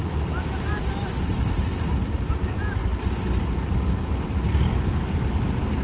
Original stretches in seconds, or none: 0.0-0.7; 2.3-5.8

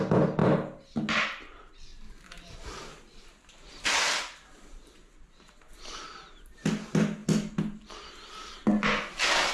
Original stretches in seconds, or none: 0.0-1.9; 5.5-9.5